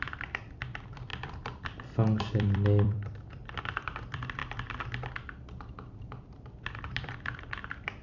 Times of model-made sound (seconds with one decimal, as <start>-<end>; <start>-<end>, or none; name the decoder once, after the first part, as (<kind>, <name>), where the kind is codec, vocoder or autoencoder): 0.0-4.4 (vocoder, BigVGAN v2); 6.8-8.0